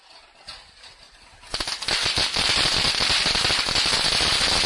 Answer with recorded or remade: recorded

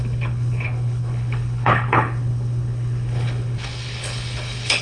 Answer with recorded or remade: remade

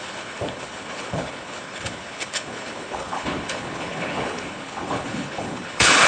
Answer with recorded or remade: remade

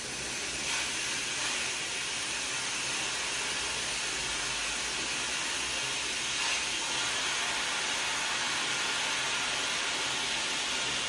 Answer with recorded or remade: recorded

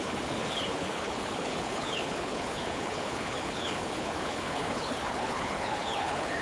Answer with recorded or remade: remade